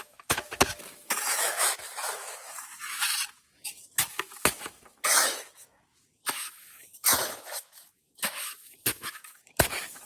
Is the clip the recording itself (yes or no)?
no